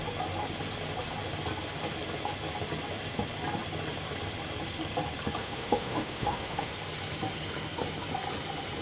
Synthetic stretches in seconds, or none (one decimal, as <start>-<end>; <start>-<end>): 5.4-6.7